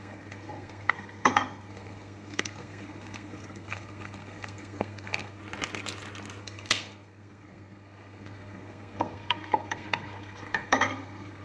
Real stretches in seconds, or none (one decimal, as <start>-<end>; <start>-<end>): 5.4-6.4